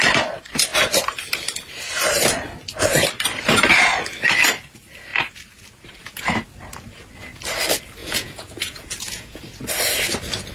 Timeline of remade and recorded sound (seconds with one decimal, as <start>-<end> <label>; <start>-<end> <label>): 0.0-8.0 recorded; 8.0-9.4 remade; 9.4-10.5 recorded